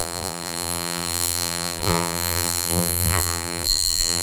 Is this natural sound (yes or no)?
no